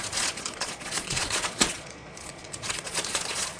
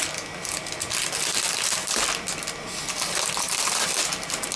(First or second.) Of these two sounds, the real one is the second